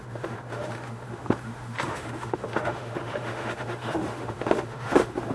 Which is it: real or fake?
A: fake